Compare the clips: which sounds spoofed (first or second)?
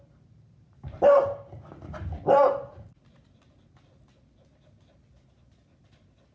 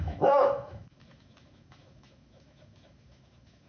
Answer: second